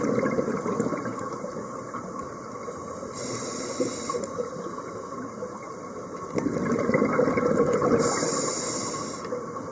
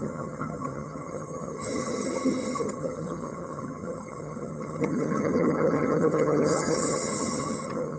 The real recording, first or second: first